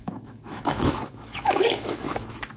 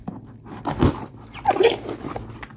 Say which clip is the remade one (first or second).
first